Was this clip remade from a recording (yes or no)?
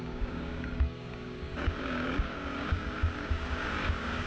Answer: yes